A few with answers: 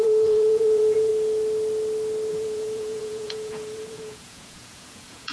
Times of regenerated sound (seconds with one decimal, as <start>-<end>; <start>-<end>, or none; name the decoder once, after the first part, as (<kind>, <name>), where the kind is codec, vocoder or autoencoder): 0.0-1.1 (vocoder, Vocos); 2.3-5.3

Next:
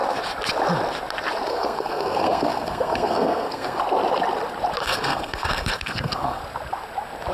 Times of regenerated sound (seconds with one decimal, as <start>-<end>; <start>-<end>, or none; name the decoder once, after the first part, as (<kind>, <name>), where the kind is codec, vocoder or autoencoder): 1.5-3.8 (codec, SNAC); 4.8-6.4

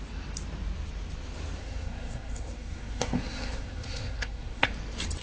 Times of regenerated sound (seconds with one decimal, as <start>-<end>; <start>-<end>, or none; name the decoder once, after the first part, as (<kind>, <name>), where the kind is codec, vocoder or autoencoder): 1.6-4.7 (codec, SNAC)

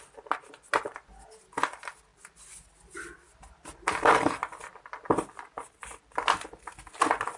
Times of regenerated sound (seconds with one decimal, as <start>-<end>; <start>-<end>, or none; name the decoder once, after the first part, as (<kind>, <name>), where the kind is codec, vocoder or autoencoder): none